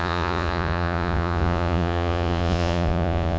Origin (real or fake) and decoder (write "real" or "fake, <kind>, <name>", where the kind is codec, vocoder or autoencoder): fake, vocoder, Vocos